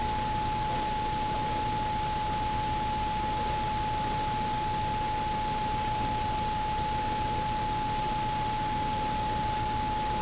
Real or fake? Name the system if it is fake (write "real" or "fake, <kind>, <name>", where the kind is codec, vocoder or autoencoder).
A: real